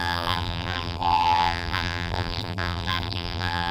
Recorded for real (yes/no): no